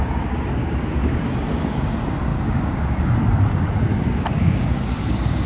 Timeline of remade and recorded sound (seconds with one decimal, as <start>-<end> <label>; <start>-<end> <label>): 0.0-0.6 recorded; 0.6-1.3 remade; 1.3-2.3 recorded; 2.3-3.1 remade; 3.1-3.9 recorded; 3.9-5.5 remade